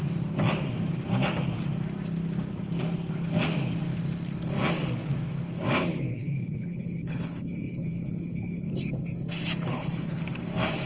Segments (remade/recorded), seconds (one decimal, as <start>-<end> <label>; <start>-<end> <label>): 0.0-6.1 recorded; 6.1-8.7 remade; 8.7-9.7 recorded; 9.7-10.2 remade; 10.2-10.9 recorded